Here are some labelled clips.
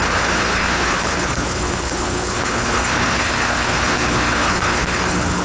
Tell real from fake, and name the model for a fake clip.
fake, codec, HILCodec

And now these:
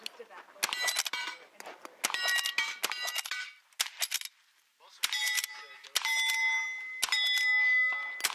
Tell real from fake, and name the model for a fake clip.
real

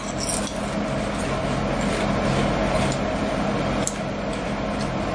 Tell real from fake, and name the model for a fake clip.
real